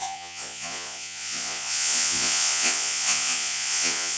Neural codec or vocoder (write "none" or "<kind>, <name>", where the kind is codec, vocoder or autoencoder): vocoder, Vocos